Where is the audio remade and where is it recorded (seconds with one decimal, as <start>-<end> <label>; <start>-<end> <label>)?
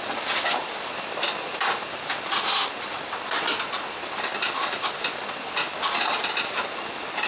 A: 0.0-7.3 recorded